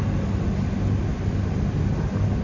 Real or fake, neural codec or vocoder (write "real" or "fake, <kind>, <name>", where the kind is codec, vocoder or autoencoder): real